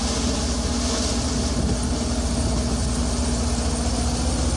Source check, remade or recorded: recorded